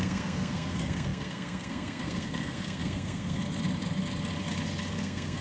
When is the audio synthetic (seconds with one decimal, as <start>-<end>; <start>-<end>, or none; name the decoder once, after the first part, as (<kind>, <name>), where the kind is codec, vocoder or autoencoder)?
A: 0.0-3.4 (codec, SNAC); 4.9-5.4